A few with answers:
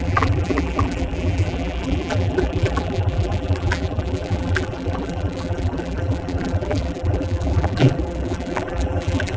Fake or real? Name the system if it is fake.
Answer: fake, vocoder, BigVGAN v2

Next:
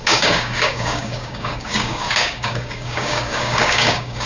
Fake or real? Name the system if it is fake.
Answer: fake, codec, DAC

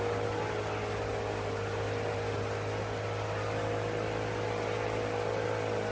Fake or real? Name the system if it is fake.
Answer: real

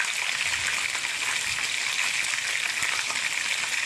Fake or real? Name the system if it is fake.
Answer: real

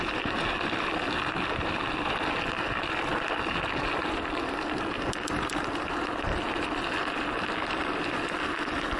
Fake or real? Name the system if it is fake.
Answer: real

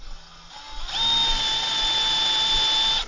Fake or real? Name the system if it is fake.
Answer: real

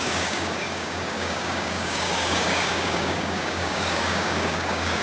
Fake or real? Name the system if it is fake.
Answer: fake, codec, DAC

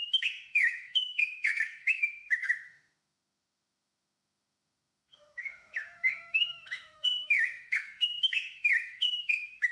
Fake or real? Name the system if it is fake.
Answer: fake, autoencoder, DAC-VAE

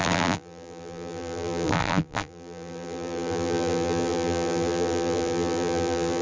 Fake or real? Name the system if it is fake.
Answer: fake, vocoder, BigVGAN v2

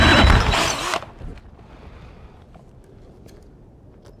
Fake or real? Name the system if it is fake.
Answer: real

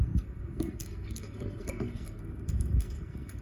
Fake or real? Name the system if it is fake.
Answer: fake, codec, SNAC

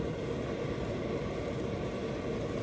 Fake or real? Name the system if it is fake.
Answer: fake, vocoder, BigVGAN v2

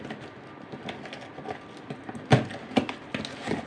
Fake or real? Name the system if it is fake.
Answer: real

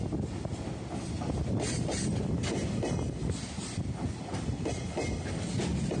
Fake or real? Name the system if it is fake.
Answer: real